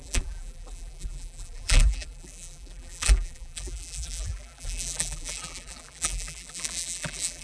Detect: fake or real fake